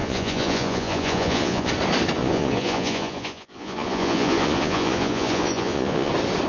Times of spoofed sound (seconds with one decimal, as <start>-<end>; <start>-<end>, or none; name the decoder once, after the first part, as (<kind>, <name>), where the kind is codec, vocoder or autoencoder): 0.0-1.7 (vocoder, Vocos); 2.2-6.1